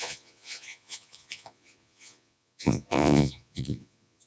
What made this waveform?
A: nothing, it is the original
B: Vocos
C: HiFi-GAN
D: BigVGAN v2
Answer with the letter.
B